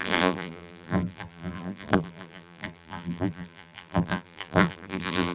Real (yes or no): no